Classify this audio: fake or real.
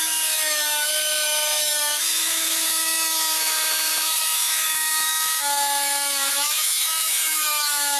fake